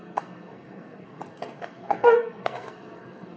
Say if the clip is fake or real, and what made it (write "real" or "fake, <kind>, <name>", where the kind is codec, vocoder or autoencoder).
fake, codec, SNAC